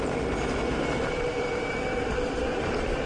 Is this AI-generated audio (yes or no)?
yes